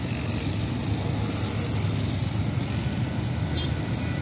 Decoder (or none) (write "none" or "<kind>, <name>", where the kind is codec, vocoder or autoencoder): none